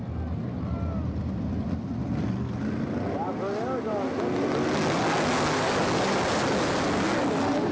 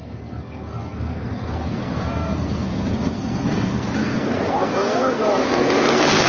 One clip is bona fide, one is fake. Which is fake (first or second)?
second